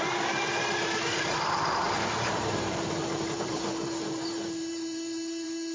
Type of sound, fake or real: fake